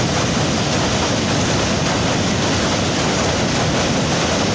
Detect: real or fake real